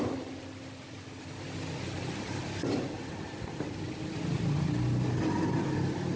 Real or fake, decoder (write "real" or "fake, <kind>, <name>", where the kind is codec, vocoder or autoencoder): real